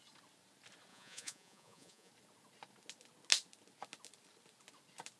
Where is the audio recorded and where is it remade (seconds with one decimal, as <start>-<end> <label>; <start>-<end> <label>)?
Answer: 0.0-0.9 recorded; 0.9-2.1 remade; 2.1-5.2 recorded